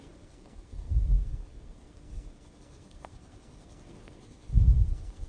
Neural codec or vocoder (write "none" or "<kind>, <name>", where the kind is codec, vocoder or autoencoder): codec, SNAC